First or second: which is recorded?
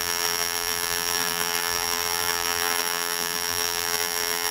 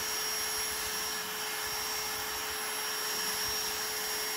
second